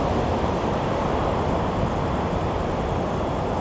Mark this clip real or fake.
real